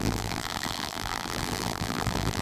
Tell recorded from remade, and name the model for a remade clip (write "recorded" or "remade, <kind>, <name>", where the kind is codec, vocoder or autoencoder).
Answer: remade, vocoder, BigVGAN v2